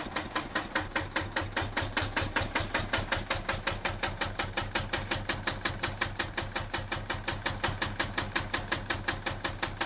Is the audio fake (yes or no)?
no